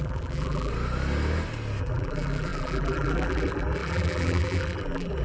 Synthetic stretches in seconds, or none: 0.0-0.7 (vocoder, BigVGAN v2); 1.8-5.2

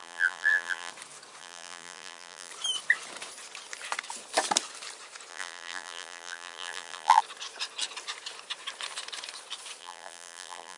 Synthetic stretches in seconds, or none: 0.0-0.9 (vocoder, BigVGAN v2); 1.4-2.5; 5.3-7.2; 9.8-10.8

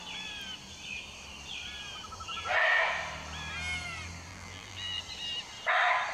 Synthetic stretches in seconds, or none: 4.3-5.0 (vocoder, BigVGAN v2)

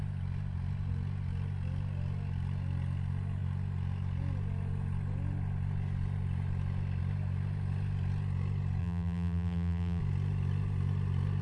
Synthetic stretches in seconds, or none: 8.8-10.0 (vocoder, BigVGAN v2)

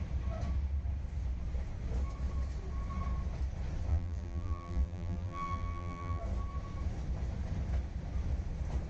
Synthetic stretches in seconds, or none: 3.9-6.2 (vocoder, BigVGAN v2)

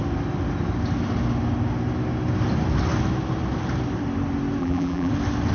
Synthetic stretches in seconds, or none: 4.6-5.1 (vocoder, BigVGAN v2)